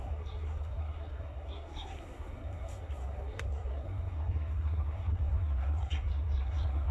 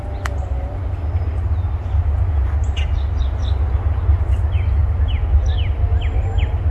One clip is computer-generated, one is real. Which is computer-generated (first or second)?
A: first